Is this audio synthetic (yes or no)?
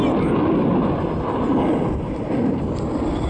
no